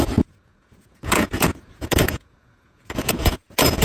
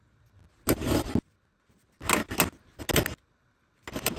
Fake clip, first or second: first